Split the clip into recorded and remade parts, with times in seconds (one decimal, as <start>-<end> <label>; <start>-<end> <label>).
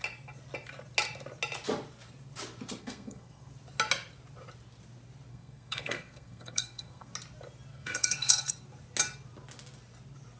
0.0-2.8 recorded; 2.8-3.5 remade; 3.5-5.3 recorded; 5.3-7.1 remade; 7.1-7.7 recorded; 7.7-8.5 remade; 8.5-10.4 recorded